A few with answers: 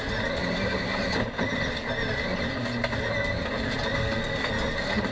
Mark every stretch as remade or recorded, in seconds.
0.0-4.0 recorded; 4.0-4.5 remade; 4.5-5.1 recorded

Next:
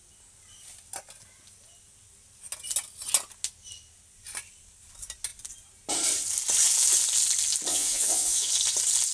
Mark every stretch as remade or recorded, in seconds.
0.0-7.7 recorded; 7.7-8.5 remade; 8.5-9.1 recorded

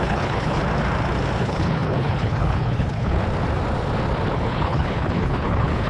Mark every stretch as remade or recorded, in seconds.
0.0-0.6 remade; 0.6-1.4 recorded; 1.4-3.2 remade; 3.2-4.3 recorded; 4.3-5.9 remade

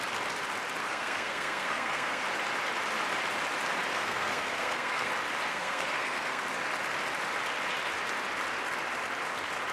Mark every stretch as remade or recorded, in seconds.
0.0-0.8 recorded; 0.8-2.2 remade; 2.2-3.9 recorded; 3.9-5.1 remade; 5.1-5.5 recorded; 5.5-6.4 remade; 6.4-9.7 recorded